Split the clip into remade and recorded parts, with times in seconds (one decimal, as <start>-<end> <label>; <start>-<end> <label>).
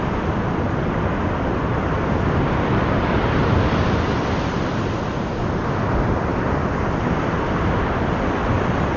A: 0.0-9.0 recorded